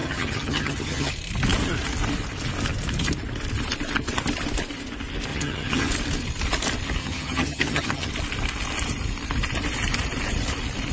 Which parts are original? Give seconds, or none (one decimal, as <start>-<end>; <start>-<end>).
1.1-5.3; 5.9-7.0; 8.1-10.9